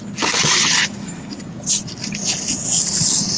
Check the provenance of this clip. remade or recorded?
recorded